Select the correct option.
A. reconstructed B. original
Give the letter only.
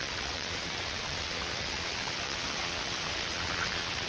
A